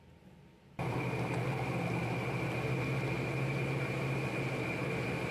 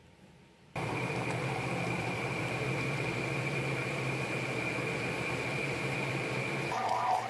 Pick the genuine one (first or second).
first